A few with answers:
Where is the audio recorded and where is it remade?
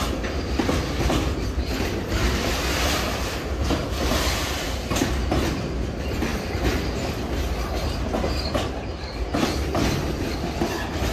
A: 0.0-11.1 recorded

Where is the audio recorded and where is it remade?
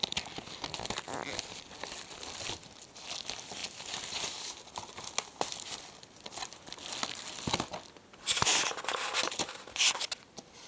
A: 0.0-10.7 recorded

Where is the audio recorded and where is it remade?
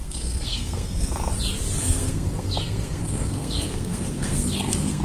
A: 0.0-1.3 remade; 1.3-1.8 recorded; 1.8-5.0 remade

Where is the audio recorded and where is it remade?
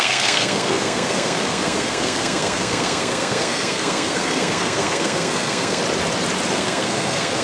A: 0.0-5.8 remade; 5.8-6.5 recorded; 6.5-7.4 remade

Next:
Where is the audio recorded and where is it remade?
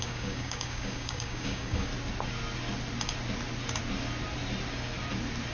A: 0.0-1.9 remade; 1.9-5.5 recorded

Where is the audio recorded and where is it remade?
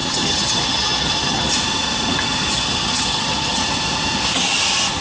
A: 0.0-1.5 remade; 1.5-2.5 recorded; 2.5-3.6 remade; 3.6-5.0 recorded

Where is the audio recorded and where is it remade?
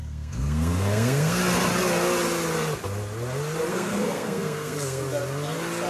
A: 0.0-1.4 remade; 1.4-3.7 recorded; 3.7-5.0 remade; 5.0-5.9 recorded